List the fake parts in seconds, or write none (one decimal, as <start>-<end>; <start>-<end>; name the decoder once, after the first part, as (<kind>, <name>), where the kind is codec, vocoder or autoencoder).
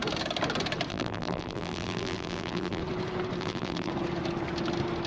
0.9-2.8 (vocoder, BigVGAN v2); 3.4-3.9